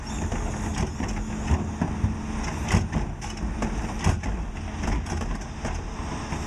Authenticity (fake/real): real